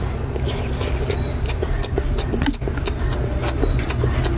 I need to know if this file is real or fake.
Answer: real